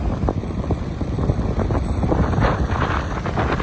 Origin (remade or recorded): recorded